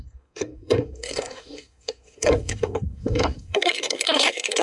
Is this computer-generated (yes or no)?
yes